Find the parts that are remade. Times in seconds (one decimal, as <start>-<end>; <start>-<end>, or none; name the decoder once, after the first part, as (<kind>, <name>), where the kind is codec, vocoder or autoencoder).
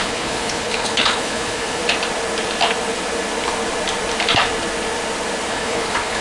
0.0-1.8 (codec, HILCodec); 5.5-6.2